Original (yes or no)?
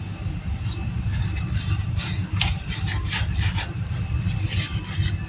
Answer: no